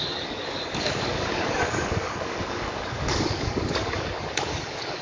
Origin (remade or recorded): remade